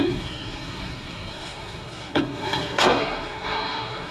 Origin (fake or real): fake